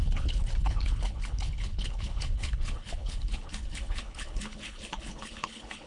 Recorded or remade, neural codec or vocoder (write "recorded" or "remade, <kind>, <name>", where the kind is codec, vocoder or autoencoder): remade, codec, HILCodec